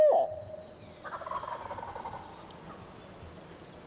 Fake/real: real